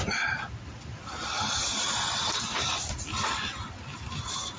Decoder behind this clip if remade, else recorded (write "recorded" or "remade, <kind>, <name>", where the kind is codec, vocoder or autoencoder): remade, vocoder, BigVGAN v2